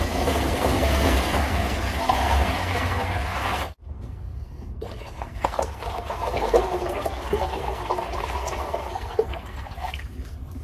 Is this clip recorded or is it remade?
remade